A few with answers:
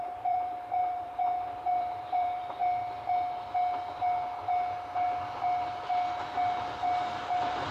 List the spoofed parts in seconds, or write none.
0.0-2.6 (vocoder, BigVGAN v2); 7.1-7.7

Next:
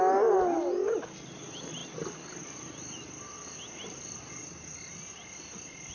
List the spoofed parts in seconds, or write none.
none